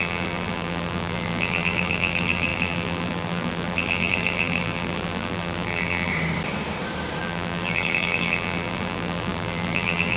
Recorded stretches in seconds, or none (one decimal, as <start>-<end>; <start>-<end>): 6.1-7.2